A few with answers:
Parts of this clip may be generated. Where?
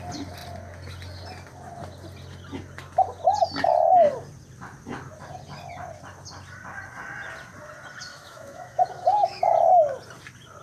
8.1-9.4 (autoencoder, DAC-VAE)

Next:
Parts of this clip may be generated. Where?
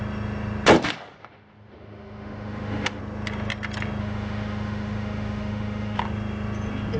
1.2-3.0 (autoencoder, DAC-VAE); 4.0-6.0